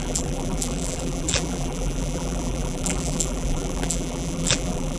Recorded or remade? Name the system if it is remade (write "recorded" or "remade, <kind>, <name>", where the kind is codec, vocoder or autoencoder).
remade, vocoder, BigVGAN v2